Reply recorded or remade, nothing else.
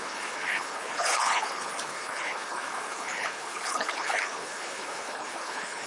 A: remade